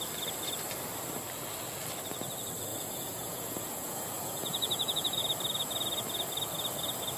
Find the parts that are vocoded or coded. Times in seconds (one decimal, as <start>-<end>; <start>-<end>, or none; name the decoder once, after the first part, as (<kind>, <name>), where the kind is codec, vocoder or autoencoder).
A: 2.7-5.2 (vocoder, Vocos)